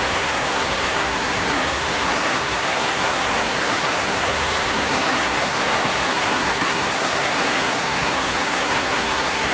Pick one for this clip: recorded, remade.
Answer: remade